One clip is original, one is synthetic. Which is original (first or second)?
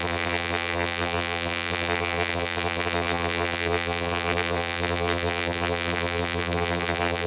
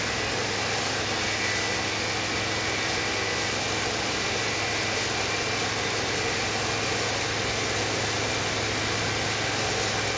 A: second